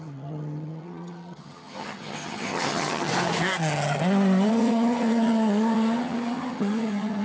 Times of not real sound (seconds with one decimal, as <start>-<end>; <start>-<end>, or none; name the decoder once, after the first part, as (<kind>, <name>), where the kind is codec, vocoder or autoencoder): 0.0-3.1 (vocoder, HiFi-GAN); 4.5-7.2